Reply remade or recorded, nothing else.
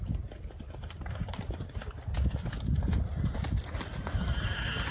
recorded